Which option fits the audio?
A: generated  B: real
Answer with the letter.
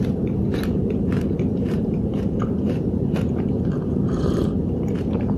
A